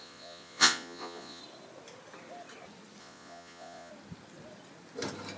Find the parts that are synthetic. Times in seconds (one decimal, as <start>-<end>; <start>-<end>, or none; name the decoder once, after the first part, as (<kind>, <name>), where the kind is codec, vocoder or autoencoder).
0.0-1.4 (vocoder, Vocos); 3.0-3.9